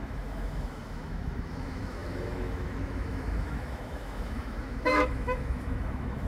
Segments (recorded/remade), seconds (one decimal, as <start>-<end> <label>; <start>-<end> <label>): 0.0-6.3 remade